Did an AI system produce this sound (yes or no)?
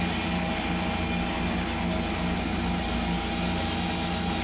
no